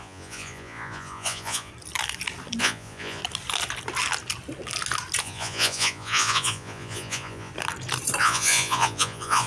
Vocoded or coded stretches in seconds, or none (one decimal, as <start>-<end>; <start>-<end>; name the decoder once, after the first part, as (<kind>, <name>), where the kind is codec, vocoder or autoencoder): 0.0-1.7 (vocoder, Vocos); 2.6-3.2; 5.2-7.5; 8.2-9.5